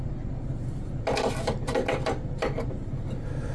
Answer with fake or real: real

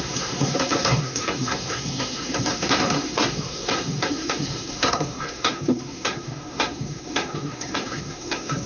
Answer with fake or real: fake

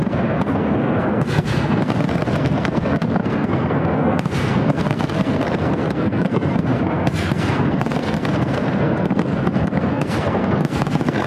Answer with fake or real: fake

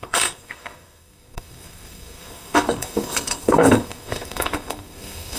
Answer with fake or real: fake